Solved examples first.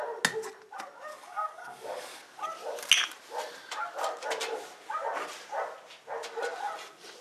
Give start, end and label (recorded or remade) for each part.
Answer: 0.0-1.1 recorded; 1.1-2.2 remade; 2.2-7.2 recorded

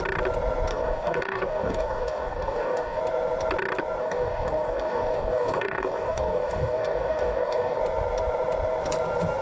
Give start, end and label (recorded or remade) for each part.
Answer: 0.0-0.7 recorded; 0.7-3.0 remade; 3.0-4.0 recorded; 4.0-7.8 remade; 7.8-9.4 recorded

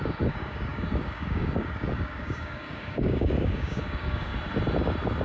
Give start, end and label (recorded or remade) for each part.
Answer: 0.0-4.3 remade; 4.3-5.2 recorded

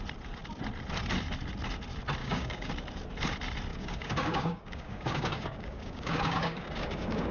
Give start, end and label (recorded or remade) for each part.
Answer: 0.0-2.2 recorded; 2.2-2.7 remade; 2.7-3.7 recorded; 3.7-7.3 remade

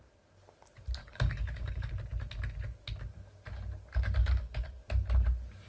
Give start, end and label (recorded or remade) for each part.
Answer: 0.0-1.0 recorded; 1.0-1.9 remade; 1.9-4.2 recorded; 4.2-4.8 remade; 4.8-5.7 recorded

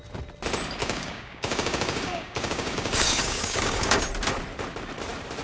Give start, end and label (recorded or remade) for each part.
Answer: 0.0-0.8 recorded; 0.8-4.0 remade; 4.0-5.4 recorded